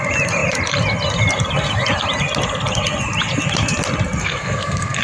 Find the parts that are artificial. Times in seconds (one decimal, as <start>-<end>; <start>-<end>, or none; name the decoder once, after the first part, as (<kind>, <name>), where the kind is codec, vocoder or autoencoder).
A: 4.2-5.0 (codec, SNAC)